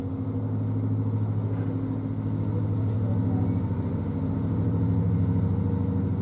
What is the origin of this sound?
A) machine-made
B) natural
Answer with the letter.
B